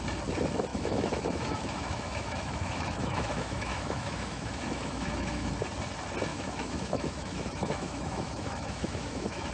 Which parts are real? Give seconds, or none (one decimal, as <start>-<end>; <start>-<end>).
0.0-0.7; 5.5-6.3